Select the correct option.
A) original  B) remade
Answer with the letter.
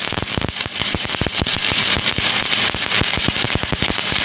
B